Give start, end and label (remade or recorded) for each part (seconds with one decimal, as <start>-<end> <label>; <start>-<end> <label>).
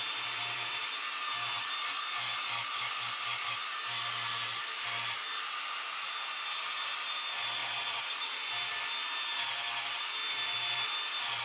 0.0-7.6 recorded; 7.6-8.5 remade; 8.5-11.4 recorded